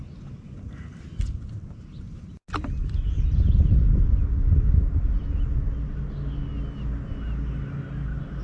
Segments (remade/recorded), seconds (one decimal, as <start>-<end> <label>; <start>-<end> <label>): 0.0-8.4 recorded